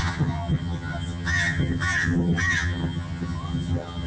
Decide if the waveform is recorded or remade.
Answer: remade